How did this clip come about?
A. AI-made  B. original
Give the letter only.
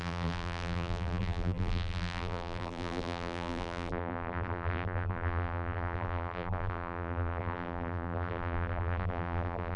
A